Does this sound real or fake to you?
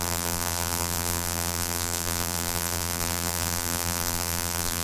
fake